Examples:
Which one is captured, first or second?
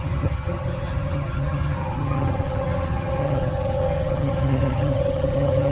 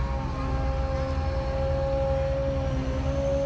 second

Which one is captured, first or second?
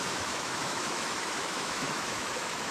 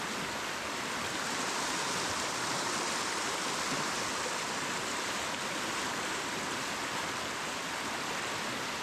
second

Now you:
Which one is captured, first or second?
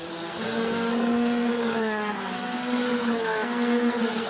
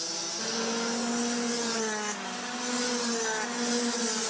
second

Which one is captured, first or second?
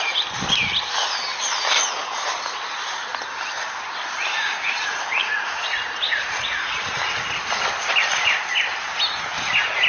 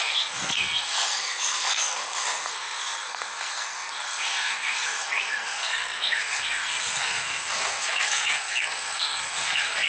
first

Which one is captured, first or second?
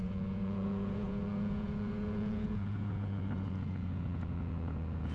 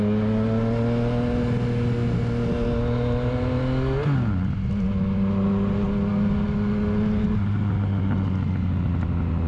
second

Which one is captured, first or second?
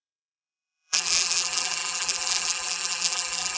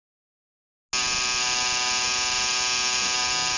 second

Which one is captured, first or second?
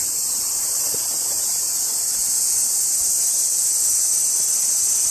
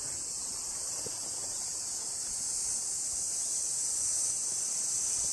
second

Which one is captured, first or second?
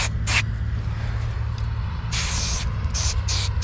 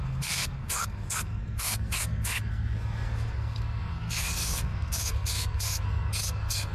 first